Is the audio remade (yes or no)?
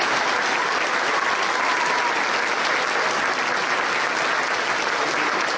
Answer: no